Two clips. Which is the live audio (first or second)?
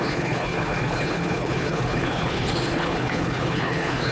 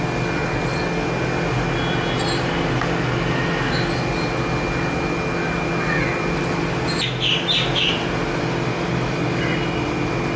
second